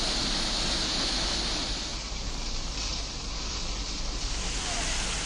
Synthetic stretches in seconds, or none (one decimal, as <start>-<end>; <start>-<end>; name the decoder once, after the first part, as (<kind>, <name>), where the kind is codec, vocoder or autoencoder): 2.9-3.9 (vocoder, BigVGAN v2)